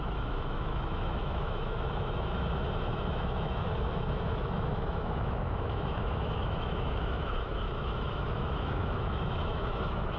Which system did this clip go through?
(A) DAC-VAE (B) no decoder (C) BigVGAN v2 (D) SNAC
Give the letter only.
A